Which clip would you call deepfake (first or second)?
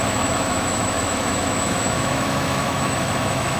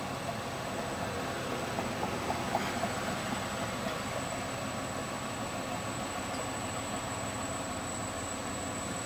first